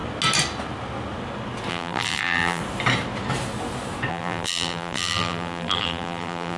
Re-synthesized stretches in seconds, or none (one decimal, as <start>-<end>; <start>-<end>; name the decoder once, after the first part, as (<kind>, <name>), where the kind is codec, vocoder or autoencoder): 1.7-2.6 (vocoder, BigVGAN v2); 4.1-6.6